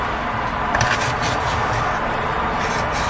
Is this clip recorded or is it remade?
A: remade